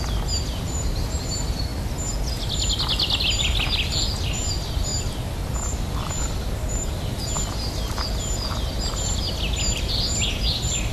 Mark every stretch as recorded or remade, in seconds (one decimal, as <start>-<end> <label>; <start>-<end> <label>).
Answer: 0.0-10.9 recorded